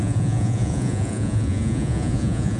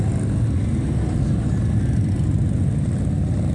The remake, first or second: first